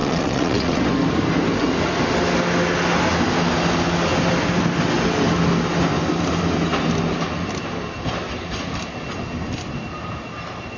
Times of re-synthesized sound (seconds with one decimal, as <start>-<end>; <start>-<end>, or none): 0.0-0.8